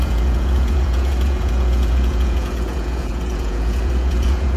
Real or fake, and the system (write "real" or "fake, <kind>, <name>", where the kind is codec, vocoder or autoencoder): fake, vocoder, Vocos